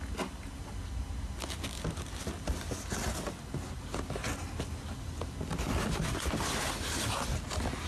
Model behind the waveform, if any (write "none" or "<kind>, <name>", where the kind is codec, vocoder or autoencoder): none